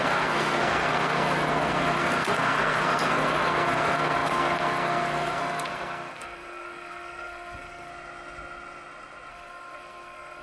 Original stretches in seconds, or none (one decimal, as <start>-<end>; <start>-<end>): 7.9-9.3